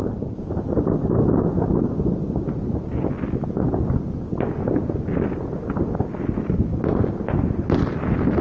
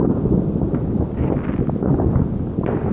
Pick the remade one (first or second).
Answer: second